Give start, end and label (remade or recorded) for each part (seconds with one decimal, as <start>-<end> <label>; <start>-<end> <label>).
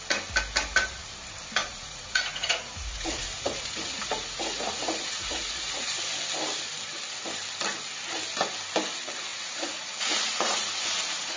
0.0-1.6 recorded; 1.6-5.9 remade; 5.9-9.3 recorded; 9.3-11.4 remade